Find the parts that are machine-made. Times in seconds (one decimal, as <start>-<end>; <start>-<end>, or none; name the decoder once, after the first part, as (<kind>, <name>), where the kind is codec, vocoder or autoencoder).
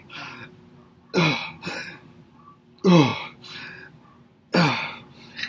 1.4-2.1 (vocoder, BigVGAN v2)